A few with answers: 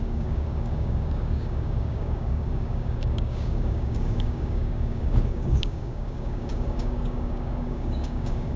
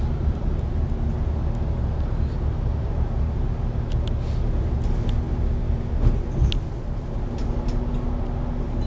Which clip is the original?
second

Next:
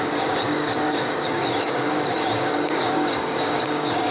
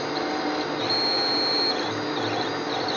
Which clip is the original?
second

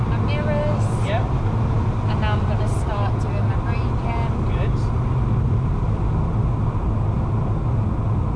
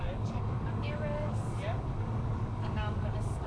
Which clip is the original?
first